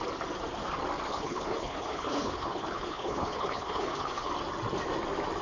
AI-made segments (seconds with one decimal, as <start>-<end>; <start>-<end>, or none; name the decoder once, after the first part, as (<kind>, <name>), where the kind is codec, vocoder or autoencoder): 1.1-4.3 (codec, HILCodec)